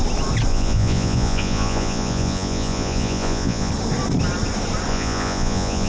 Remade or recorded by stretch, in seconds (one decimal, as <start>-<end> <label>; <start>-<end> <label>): 0.0-0.5 recorded; 0.5-3.7 remade; 3.7-4.9 recorded; 4.9-5.9 remade